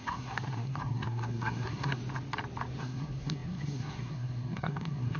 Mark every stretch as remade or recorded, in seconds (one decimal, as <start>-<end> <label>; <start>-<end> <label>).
0.0-2.0 remade; 2.0-2.8 recorded; 2.8-5.2 remade